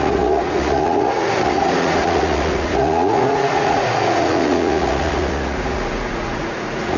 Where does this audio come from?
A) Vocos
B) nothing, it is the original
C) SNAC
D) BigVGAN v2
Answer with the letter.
A